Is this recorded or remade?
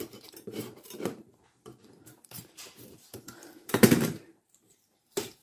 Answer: remade